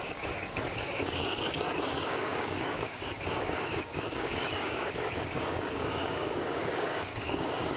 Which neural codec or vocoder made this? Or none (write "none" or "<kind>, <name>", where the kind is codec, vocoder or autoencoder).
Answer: codec, DAC